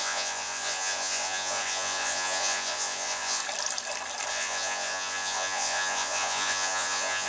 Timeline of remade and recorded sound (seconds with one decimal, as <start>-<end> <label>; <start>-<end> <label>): 0.0-3.4 remade; 3.4-4.3 recorded; 4.3-7.3 remade